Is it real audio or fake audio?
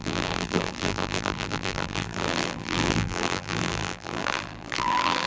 fake